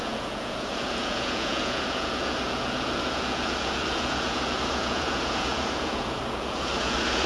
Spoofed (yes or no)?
yes